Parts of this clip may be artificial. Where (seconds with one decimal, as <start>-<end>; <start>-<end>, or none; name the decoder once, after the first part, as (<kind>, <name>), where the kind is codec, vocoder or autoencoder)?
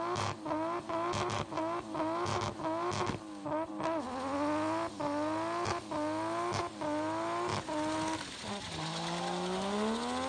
none